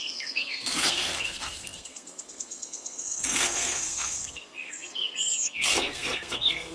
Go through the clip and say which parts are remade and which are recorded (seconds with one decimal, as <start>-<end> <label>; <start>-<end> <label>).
0.0-6.7 remade